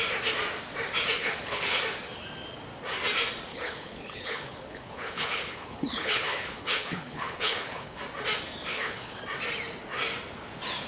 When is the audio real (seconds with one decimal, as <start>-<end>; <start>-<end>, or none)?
0.0-1.2; 1.8-3.5; 8.0-8.7; 9.2-10.9